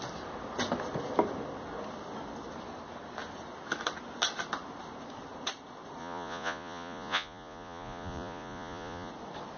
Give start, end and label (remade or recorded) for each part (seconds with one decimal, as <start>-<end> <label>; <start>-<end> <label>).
0.0-6.0 recorded; 6.0-9.1 remade; 9.1-9.6 recorded